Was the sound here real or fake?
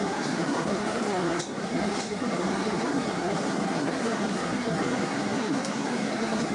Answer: fake